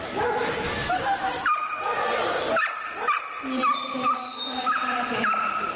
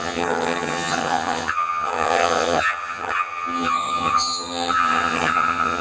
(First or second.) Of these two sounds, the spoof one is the second